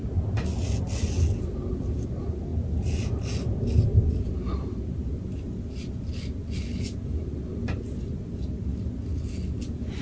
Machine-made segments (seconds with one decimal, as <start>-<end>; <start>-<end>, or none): none